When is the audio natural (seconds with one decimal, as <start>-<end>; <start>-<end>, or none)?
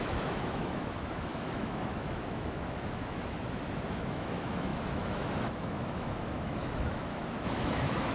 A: none